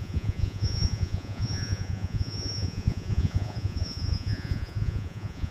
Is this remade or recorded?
remade